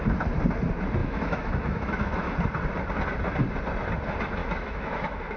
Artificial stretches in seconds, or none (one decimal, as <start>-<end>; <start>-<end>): 1.0-2.3; 4.4-5.4